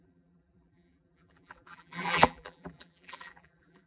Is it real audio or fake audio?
fake